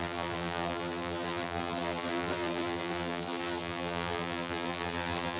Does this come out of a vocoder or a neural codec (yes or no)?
yes